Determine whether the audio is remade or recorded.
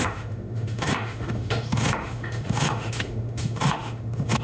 remade